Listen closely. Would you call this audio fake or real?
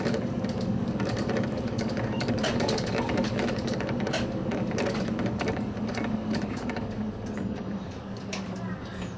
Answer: fake